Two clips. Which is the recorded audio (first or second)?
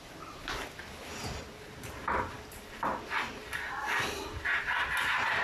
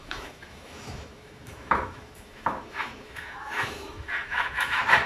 first